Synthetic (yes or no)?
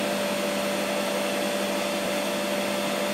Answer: no